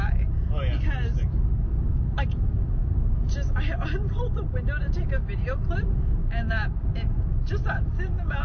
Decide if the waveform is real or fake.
real